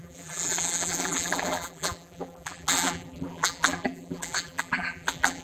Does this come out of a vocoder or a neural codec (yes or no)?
yes